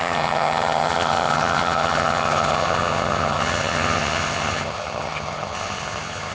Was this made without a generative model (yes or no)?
no